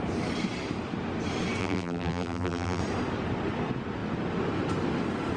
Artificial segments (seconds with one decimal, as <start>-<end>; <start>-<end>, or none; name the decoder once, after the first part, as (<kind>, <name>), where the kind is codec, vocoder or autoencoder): 1.6-2.8 (vocoder, BigVGAN v2)